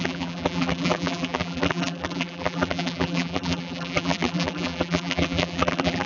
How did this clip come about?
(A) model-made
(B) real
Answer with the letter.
A